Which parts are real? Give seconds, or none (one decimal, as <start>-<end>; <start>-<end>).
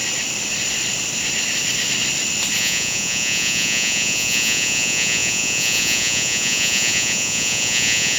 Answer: 0.0-2.6